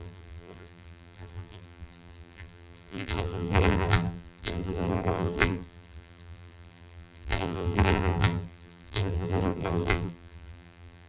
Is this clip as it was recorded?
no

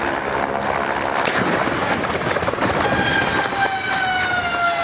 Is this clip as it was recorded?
yes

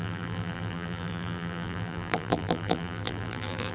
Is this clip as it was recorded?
no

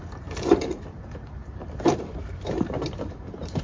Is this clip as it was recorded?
no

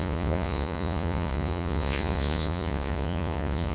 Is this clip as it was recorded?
no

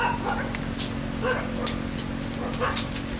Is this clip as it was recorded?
yes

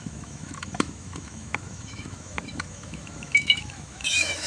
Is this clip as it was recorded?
no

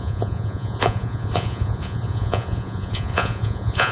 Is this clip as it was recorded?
no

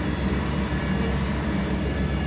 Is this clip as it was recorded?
yes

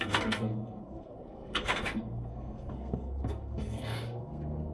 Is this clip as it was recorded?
no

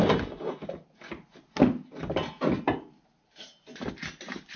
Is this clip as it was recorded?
yes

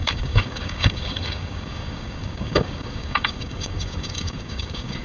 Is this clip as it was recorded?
no